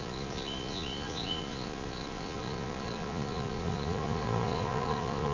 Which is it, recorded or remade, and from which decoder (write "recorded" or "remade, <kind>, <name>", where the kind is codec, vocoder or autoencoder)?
remade, vocoder, Vocos